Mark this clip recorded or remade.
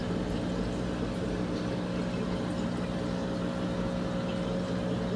recorded